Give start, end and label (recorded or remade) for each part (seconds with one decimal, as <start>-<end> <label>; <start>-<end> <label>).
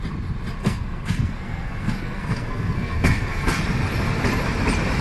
0.0-0.6 recorded; 0.6-3.6 remade; 3.6-5.0 recorded